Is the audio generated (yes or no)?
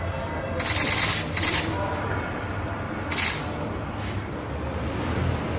no